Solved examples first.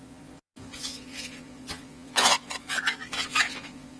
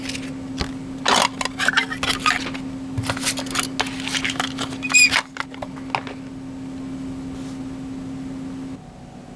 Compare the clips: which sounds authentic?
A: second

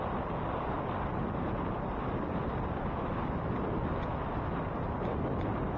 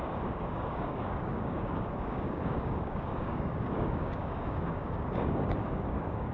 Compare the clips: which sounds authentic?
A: first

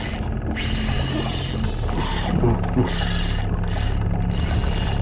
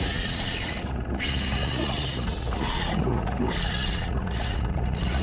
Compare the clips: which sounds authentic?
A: first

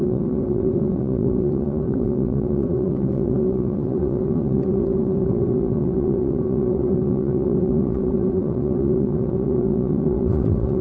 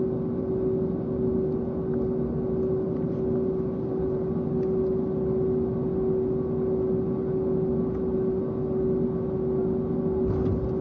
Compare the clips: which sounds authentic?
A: second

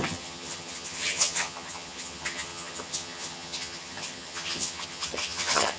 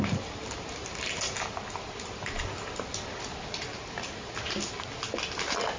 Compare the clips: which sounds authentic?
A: second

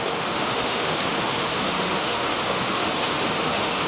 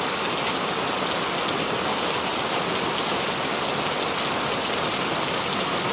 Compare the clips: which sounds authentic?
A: second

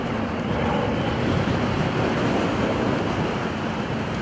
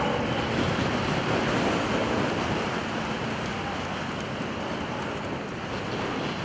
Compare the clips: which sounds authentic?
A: second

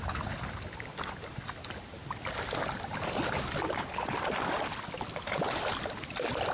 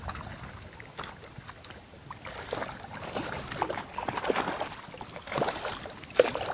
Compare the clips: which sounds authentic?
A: first